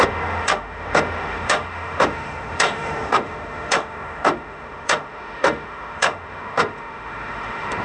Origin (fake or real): fake